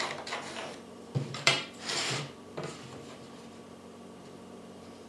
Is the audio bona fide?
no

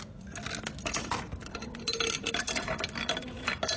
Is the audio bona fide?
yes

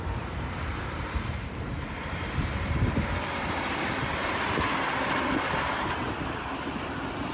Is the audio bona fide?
no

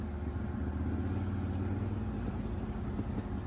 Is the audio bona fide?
yes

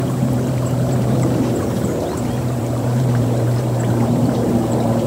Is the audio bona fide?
no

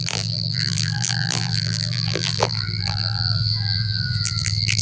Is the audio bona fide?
no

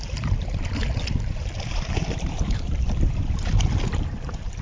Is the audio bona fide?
no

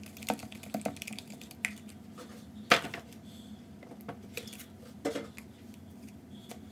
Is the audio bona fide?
yes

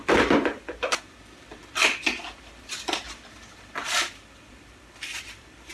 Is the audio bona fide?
no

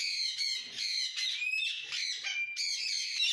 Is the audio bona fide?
yes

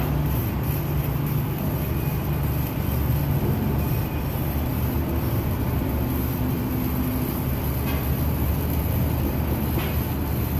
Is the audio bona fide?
yes